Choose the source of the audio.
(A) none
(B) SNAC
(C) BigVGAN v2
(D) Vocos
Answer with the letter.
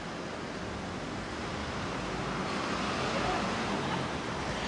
A